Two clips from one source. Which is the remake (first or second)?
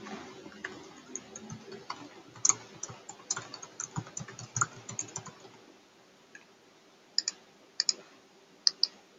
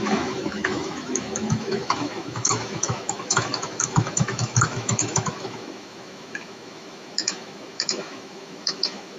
second